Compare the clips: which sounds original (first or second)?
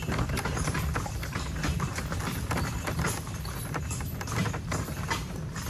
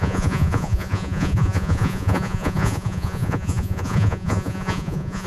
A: first